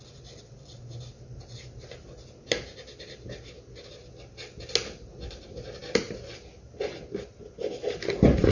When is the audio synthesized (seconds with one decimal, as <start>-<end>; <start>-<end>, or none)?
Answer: none